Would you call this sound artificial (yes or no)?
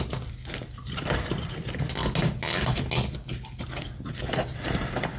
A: no